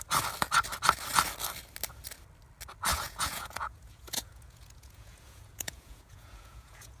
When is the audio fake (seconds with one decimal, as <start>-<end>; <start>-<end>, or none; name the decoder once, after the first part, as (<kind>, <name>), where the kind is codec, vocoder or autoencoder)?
2.9-7.0 (vocoder, Vocos)